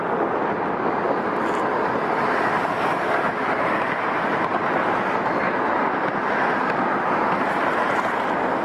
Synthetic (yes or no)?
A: no